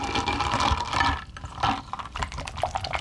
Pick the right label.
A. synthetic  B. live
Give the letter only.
B